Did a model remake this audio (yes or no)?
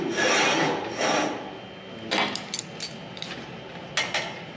no